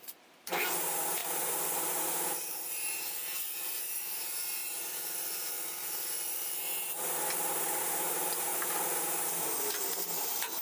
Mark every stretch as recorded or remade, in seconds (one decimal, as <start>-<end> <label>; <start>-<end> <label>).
0.0-6.7 remade; 6.7-7.8 recorded; 7.8-10.6 remade